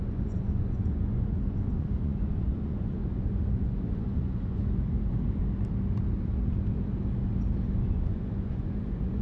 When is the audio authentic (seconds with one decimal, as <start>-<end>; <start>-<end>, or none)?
5.4-7.9